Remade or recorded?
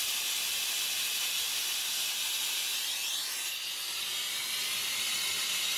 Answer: recorded